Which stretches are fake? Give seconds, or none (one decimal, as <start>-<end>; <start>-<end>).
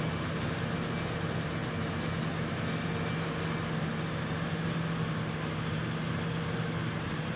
none